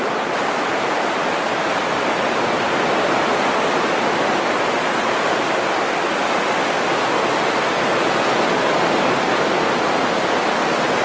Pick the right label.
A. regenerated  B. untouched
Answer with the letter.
B